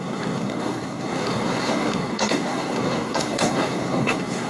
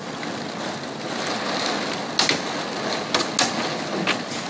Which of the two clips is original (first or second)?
second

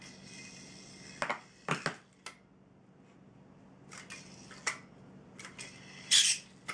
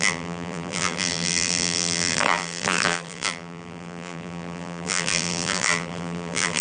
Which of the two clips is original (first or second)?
first